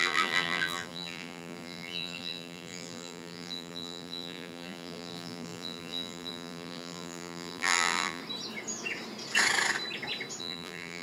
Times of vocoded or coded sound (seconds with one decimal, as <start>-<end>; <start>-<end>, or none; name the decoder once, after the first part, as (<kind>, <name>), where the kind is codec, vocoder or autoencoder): 0.0-8.2 (vocoder, BigVGAN v2); 10.4-11.0